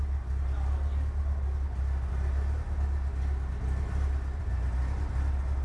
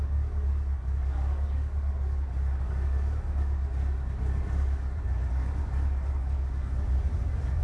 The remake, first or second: second